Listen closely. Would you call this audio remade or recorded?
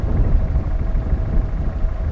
recorded